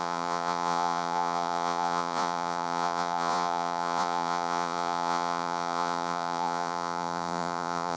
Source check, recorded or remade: remade